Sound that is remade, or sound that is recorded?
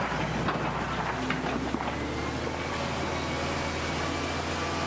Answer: recorded